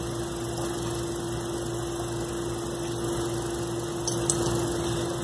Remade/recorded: recorded